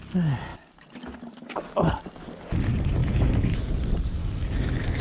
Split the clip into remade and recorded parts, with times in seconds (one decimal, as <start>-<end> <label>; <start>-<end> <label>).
0.0-3.0 recorded; 3.0-3.7 remade; 3.7-4.2 recorded; 4.2-5.0 remade